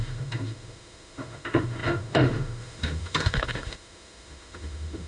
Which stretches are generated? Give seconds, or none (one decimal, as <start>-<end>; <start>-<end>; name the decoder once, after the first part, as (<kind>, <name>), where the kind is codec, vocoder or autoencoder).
0.0-5.1 (autoencoder, DAC-VAE)